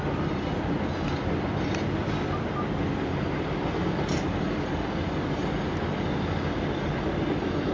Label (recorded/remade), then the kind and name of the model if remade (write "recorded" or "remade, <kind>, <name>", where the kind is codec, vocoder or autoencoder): recorded